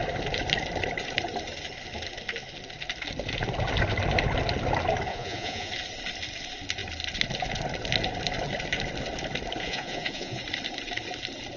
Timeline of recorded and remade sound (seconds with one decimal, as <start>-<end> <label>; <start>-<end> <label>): 0.0-5.1 recorded; 5.1-5.7 remade; 5.7-9.6 recorded; 9.6-10.4 remade; 10.4-11.6 recorded

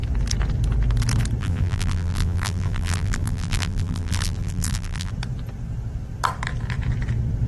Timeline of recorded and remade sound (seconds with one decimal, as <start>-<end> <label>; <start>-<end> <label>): 0.0-1.4 recorded; 1.4-5.1 remade; 5.1-7.5 recorded

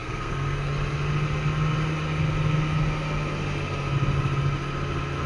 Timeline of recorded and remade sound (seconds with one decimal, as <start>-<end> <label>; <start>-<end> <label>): 0.0-0.7 remade; 0.7-5.3 recorded

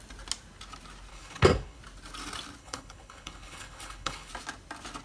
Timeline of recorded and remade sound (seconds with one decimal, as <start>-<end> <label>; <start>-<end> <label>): 0.0-1.1 recorded; 1.1-1.8 remade; 1.8-2.6 recorded; 2.6-4.3 remade; 4.3-5.0 recorded

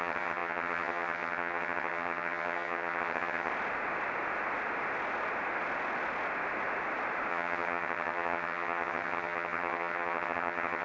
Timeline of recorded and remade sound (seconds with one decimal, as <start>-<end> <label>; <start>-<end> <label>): 0.0-3.5 remade; 3.5-7.3 recorded; 7.3-10.8 remade

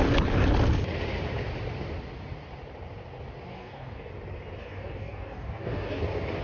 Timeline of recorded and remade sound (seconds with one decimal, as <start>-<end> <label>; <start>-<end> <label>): 0.0-3.5 recorded; 3.5-4.1 remade; 4.1-4.6 recorded; 4.6-6.0 remade; 6.0-6.4 recorded

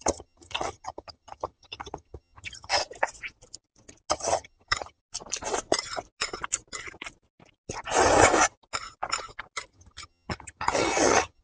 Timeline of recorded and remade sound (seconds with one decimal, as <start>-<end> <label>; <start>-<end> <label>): 0.0-2.8 remade; 2.8-4.1 recorded; 4.1-5.0 remade; 5.0-9.7 recorded; 9.7-11.4 remade

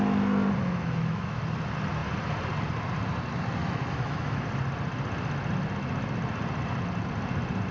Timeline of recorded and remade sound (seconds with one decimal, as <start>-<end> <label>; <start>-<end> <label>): 0.0-0.6 recorded; 0.6-1.4 remade; 1.4-3.6 recorded; 3.6-4.4 remade; 4.4-7.7 recorded